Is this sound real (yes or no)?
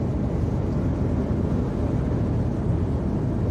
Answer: yes